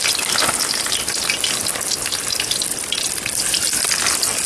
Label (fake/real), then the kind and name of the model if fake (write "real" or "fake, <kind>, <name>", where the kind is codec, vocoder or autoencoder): real